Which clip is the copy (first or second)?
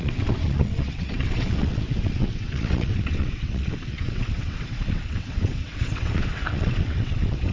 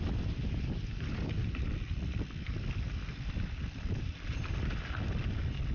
first